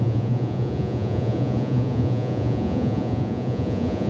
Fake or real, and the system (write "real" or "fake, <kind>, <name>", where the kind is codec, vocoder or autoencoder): fake, vocoder, Vocos